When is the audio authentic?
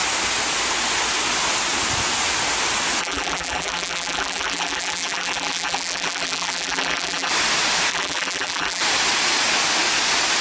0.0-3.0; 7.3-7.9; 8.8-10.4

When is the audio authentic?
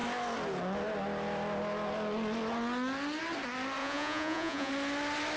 0.0-3.8; 4.7-5.4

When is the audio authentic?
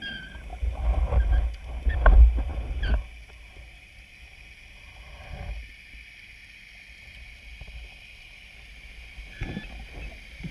0.0-10.5